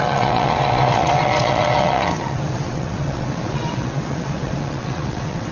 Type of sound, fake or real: fake